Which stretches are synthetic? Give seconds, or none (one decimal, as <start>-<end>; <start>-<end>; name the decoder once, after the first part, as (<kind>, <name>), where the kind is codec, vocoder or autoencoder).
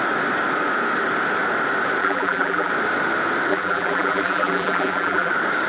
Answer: 2.0-2.7 (vocoder, BigVGAN v2); 3.5-5.3